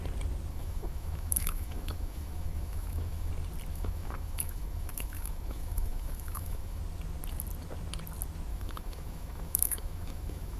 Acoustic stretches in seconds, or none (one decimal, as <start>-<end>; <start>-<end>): 0.0-0.5; 3.3-3.7; 6.8-8.5